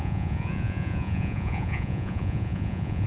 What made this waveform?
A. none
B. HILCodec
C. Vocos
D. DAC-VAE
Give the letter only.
C